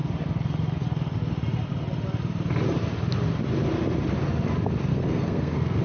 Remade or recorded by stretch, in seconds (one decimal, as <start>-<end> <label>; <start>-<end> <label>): 0.0-4.9 recorded; 4.9-5.8 remade